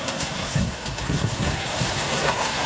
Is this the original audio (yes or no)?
no